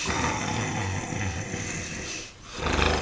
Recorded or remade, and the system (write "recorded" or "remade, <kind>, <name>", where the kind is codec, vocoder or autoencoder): recorded